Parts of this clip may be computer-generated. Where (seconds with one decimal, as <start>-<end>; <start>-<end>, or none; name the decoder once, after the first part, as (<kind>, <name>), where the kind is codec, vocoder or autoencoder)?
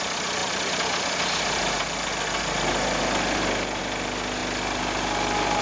none